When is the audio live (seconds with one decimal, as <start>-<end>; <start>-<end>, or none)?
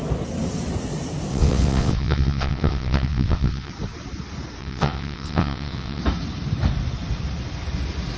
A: 0.0-1.3; 3.7-4.6; 6.0-8.2